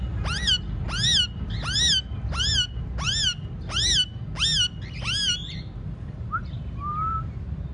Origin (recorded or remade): recorded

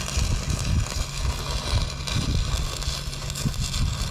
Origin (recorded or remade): recorded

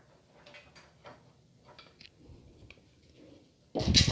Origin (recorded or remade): recorded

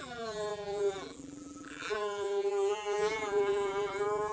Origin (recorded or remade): remade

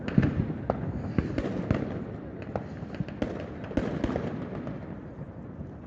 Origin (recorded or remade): recorded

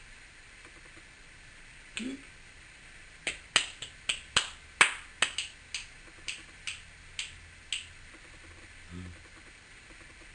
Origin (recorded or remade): recorded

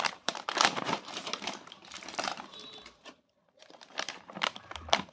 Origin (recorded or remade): remade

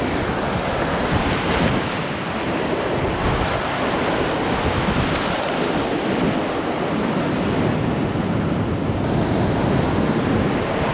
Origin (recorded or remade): recorded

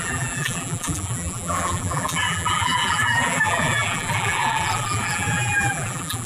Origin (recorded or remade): remade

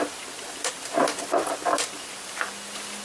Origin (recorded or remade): recorded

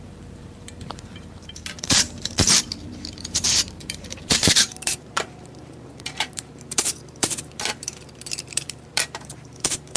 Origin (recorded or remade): remade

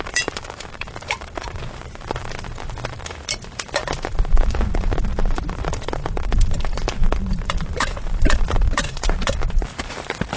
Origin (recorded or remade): remade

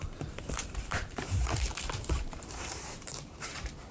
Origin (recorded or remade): remade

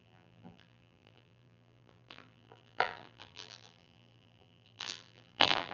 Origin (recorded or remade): remade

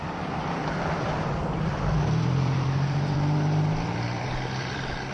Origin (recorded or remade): remade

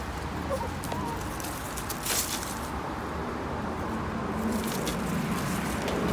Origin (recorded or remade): recorded